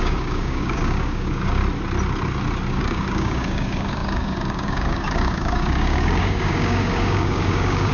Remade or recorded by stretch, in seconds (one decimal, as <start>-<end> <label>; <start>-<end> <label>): 0.0-1.6 remade; 1.6-2.8 recorded; 2.8-7.9 remade